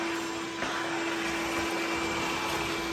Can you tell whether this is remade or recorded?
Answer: recorded